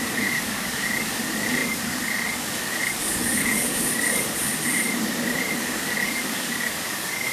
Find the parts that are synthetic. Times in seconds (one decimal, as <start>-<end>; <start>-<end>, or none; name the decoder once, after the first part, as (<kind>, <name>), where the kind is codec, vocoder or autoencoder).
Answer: 0.0-4.5 (codec, DAC); 5.5-7.3